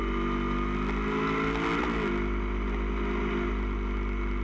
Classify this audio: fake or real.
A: real